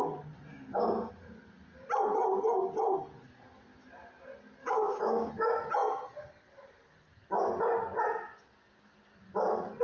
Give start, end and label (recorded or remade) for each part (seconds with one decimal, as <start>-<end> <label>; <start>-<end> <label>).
0.0-0.5 recorded; 0.5-1.1 remade; 1.1-4.6 recorded; 4.6-5.3 remade; 5.3-9.8 recorded